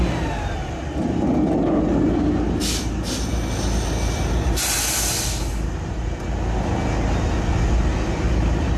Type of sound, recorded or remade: recorded